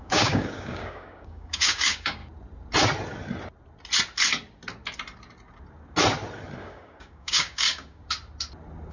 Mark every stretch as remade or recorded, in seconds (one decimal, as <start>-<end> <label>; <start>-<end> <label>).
0.0-2.2 remade; 2.2-6.6 recorded; 6.6-8.0 remade; 8.0-8.9 recorded